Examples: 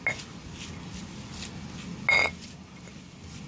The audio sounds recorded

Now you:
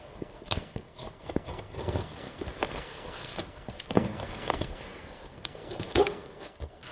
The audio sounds remade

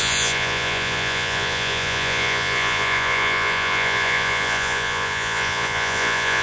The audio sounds remade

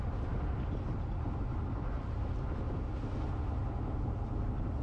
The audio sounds recorded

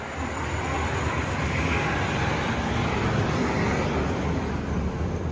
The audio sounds recorded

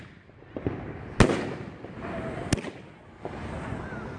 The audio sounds recorded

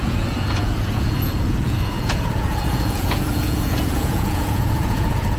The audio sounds remade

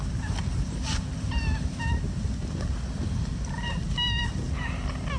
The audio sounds recorded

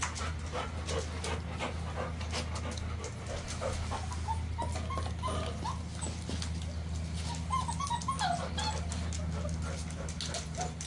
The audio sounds recorded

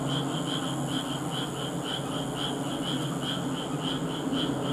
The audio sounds recorded